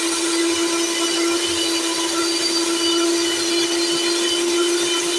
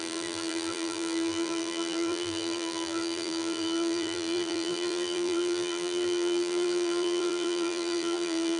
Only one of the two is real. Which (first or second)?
first